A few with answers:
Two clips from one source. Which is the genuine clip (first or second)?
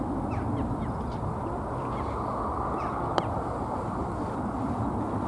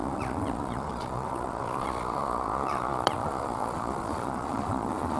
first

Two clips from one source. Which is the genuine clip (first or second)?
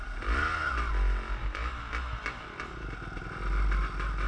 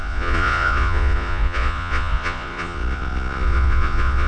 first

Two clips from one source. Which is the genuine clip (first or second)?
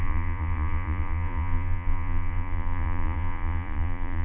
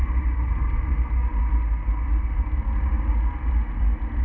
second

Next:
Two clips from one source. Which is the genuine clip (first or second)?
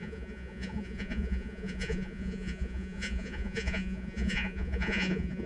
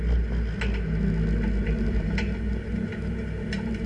second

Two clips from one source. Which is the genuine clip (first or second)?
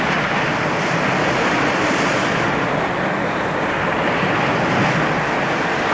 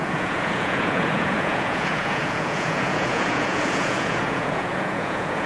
first